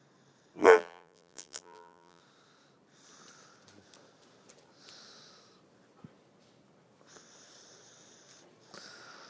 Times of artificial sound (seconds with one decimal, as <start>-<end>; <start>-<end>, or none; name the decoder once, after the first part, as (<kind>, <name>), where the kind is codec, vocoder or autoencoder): 0.6-2.2 (vocoder, BigVGAN v2)

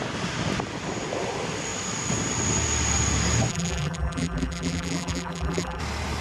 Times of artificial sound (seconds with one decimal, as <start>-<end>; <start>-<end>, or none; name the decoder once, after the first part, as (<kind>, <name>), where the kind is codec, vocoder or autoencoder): 3.5-5.8 (vocoder, BigVGAN v2)

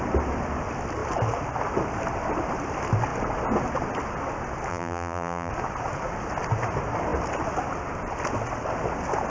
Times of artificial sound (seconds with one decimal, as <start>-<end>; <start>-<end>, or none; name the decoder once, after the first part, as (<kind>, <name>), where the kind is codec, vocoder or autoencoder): 4.7-5.5 (vocoder, BigVGAN v2)

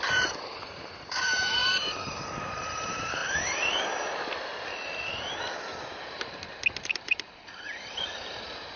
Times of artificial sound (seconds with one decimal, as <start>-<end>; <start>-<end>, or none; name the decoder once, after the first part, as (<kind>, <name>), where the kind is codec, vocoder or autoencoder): 0.0-1.6 (vocoder, BigVGAN v2); 2.2-3.2; 6.8-8.8

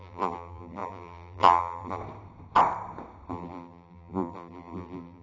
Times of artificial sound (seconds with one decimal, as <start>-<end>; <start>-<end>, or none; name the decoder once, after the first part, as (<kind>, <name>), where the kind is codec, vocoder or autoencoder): 0.0-2.0 (vocoder, BigVGAN v2); 3.3-5.2

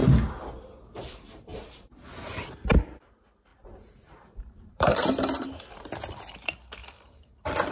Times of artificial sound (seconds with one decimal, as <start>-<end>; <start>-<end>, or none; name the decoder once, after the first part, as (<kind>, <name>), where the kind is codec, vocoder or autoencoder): 3.5-5.1 (vocoder, BigVGAN v2)

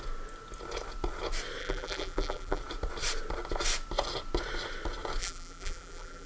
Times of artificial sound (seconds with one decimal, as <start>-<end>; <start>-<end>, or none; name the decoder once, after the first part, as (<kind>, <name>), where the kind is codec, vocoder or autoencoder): 1.6-2.6 (vocoder, BigVGAN v2); 5.2-6.3